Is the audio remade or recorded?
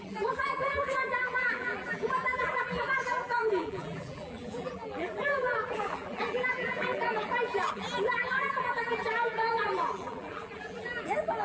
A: remade